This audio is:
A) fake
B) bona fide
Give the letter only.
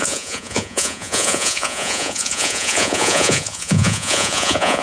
A